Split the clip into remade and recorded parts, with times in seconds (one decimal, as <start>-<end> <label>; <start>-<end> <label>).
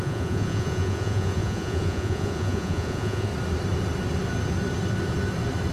0.0-3.3 remade; 3.3-5.7 recorded